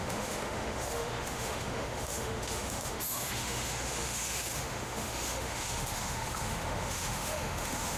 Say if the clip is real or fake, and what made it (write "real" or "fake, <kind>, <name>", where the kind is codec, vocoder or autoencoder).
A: fake, autoencoder, DAC-VAE